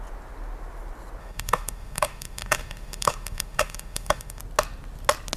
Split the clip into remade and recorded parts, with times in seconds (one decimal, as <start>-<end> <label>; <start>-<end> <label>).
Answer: 0.0-1.2 recorded; 1.2-4.4 remade; 4.4-5.4 recorded